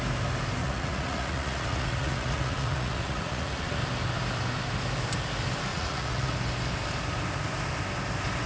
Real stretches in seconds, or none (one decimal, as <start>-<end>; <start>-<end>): 0.0-0.6; 3.8-5.7; 6.3-8.5